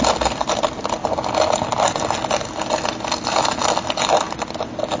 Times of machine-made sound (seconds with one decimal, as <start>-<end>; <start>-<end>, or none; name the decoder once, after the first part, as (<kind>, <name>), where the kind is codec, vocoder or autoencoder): none